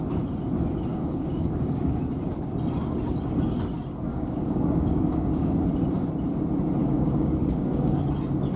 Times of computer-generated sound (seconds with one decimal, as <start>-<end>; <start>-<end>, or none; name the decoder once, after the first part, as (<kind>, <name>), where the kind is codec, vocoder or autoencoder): 0.9-2.0 (codec, DAC); 4.1-5.6; 6.8-8.0